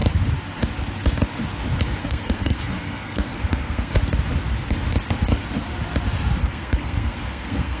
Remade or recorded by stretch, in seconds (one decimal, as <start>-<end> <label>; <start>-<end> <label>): 0.0-2.0 recorded; 2.0-4.0 remade; 4.0-6.4 recorded; 6.4-7.8 remade